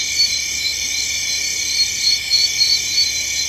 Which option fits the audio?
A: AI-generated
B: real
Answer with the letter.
A